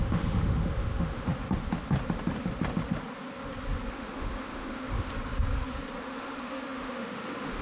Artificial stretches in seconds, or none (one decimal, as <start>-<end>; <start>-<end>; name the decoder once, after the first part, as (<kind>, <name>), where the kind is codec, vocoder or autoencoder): 0.0-1.3 (autoencoder, DAC-VAE); 3.9-5.1; 6.0-7.6